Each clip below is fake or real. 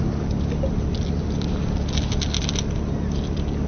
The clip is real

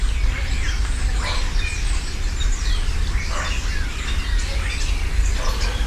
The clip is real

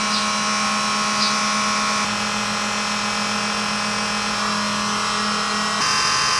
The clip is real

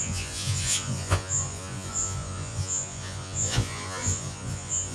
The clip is fake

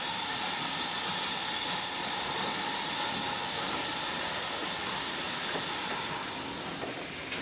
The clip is real